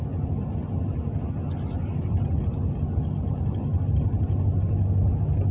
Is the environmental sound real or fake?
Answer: real